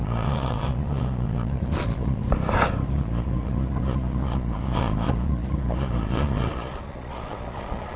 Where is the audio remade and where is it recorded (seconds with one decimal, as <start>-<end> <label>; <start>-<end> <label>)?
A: 0.0-2.2 remade; 2.2-2.9 recorded; 2.9-8.0 remade